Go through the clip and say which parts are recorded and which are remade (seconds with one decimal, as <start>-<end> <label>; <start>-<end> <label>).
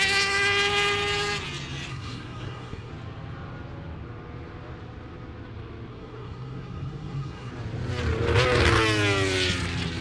0.0-1.9 recorded; 1.9-2.9 remade; 2.9-5.9 recorded; 5.9-7.5 remade; 7.5-10.0 recorded